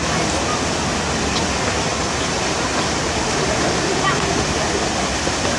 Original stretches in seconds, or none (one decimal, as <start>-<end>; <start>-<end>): 0.0-1.9; 4.3-5.6

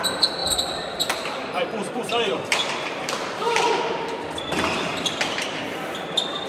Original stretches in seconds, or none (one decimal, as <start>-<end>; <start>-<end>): 0.0-0.4; 3.8-4.9; 5.6-6.5

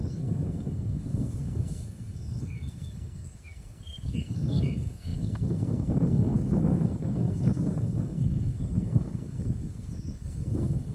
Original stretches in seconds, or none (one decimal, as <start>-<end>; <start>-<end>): none

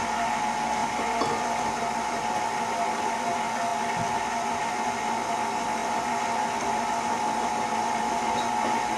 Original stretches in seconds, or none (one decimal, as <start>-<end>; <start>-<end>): 0.0-9.0

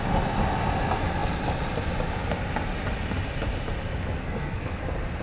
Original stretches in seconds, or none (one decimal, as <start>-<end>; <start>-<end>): 0.0-4.2; 4.8-5.2

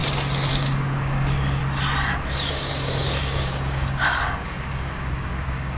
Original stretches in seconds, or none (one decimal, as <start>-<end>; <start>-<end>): 0.0-0.5; 1.6-2.5